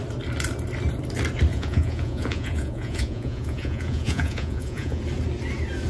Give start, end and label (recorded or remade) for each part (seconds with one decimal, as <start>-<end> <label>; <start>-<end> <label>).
0.0-1.5 recorded; 1.5-5.0 remade; 5.0-5.9 recorded